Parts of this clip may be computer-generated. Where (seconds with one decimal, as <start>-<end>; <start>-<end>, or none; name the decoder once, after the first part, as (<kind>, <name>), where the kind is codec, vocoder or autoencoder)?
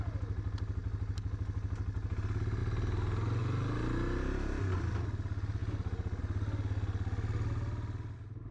none